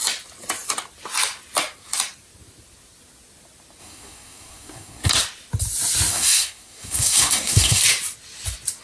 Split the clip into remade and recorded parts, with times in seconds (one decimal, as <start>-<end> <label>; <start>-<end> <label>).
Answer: 0.0-3.8 recorded; 3.8-5.1 remade; 5.1-6.1 recorded; 6.1-7.8 remade; 7.8-8.8 recorded

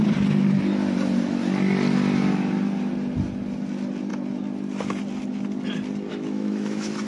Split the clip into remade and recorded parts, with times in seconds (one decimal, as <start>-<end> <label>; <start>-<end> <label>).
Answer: 0.0-6.1 recorded; 6.1-7.1 remade

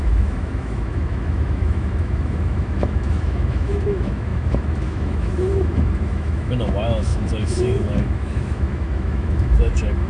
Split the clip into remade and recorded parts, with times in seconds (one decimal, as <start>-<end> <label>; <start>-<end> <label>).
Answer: 0.0-10.1 remade

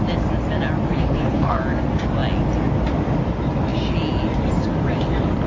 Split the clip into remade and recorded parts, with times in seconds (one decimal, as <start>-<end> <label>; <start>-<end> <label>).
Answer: 0.0-0.9 recorded; 0.9-1.6 remade; 1.6-5.5 recorded

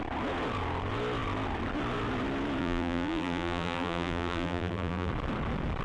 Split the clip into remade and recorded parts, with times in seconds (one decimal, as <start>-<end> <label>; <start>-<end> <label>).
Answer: 0.0-2.6 recorded; 2.6-5.1 remade; 5.1-5.8 recorded

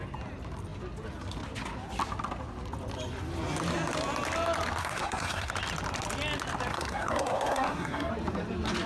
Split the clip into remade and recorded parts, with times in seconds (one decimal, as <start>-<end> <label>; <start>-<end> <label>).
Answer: 0.0-4.8 recorded; 4.8-5.5 remade; 5.5-6.7 recorded; 6.7-8.1 remade; 8.1-8.9 recorded

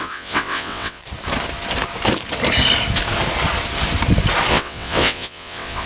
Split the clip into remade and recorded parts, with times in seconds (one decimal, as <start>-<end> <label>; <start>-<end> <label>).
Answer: 0.0-1.0 remade; 1.0-4.5 recorded; 4.5-5.9 remade

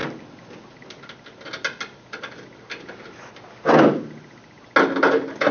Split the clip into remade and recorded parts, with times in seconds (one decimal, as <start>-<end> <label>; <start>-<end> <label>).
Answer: 0.0-5.5 recorded